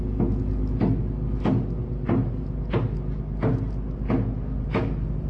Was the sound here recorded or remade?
recorded